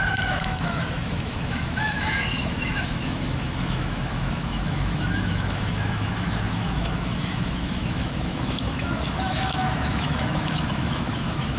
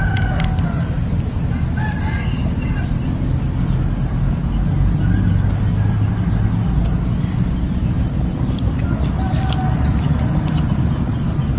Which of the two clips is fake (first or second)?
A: first